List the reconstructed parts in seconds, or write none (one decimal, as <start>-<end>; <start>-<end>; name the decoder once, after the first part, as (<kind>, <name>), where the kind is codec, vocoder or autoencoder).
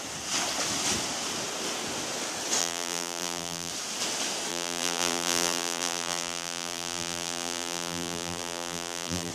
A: 2.6-3.7 (vocoder, BigVGAN v2); 4.5-9.3